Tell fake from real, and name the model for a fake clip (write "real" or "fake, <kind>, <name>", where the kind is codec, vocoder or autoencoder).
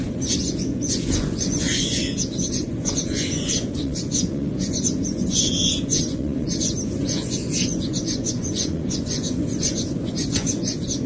fake, vocoder, Vocos